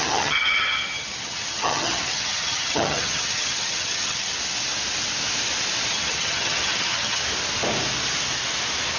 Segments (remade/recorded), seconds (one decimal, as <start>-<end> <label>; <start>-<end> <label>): 0.0-4.3 remade; 4.3-5.9 recorded; 5.9-7.2 remade; 7.2-9.0 recorded